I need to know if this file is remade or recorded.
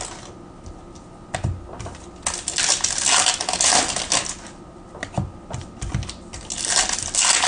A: recorded